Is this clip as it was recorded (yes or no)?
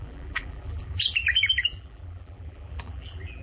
no